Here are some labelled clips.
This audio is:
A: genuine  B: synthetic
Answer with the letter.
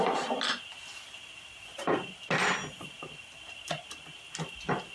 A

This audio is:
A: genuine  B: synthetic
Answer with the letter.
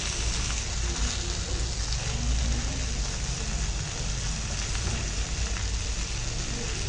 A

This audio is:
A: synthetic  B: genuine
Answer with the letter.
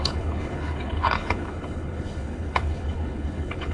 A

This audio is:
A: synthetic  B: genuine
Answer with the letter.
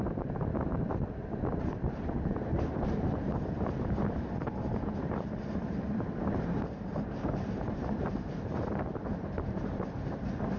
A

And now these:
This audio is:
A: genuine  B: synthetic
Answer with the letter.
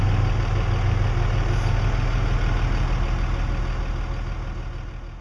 A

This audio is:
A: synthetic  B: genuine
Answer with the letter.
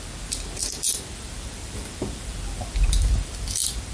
A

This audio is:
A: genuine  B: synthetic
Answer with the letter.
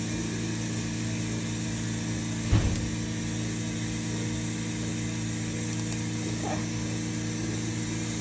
A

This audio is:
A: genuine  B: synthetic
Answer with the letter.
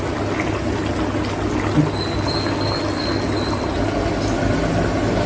A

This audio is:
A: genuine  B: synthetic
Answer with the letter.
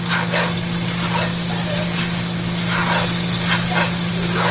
A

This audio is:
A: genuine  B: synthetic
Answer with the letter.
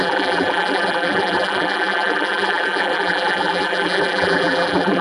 B